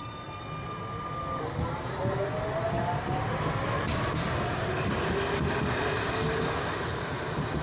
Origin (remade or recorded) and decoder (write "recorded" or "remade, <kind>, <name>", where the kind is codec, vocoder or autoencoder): recorded